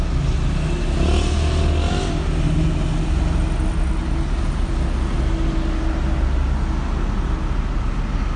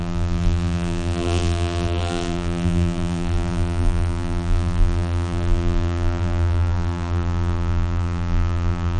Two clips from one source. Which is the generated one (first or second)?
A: second